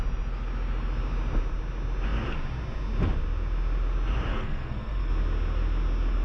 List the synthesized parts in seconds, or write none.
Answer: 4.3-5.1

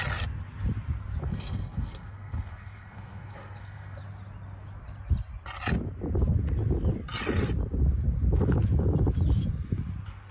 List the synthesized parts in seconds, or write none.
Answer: 1.2-4.0

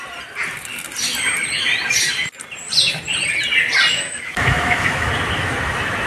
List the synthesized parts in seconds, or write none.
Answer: 3.9-5.1